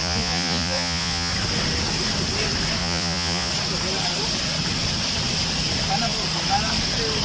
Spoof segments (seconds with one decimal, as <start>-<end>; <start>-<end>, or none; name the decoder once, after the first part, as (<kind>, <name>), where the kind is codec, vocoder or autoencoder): 0.0-1.3 (vocoder, Vocos); 2.8-3.5